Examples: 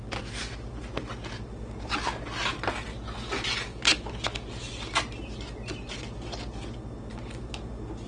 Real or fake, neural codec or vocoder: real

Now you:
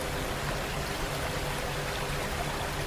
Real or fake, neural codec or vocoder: real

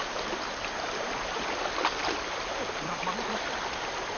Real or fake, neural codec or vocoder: real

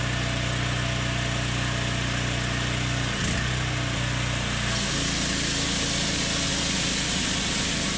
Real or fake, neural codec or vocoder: real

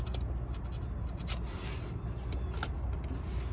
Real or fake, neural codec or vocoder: real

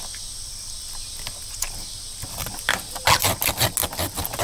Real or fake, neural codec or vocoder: real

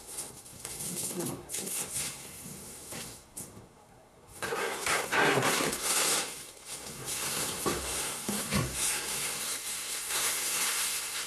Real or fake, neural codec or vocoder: fake, codec, SNAC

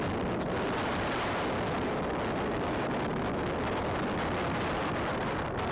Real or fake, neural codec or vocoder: real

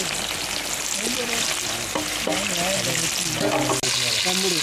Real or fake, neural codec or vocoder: real